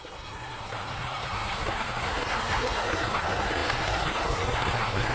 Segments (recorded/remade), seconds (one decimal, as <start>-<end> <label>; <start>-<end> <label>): 0.0-5.1 remade